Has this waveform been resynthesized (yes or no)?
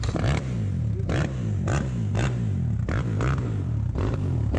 yes